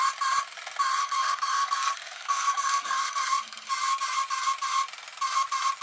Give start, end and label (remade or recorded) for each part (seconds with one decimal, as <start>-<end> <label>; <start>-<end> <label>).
0.0-0.9 recorded; 0.9-3.7 remade; 3.7-5.8 recorded